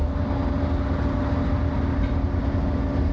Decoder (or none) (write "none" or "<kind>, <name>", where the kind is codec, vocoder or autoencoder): none